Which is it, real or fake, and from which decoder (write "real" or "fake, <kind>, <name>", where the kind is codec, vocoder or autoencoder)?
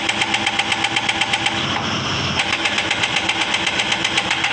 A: real